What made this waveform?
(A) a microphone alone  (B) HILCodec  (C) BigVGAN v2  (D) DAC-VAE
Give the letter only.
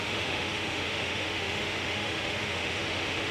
D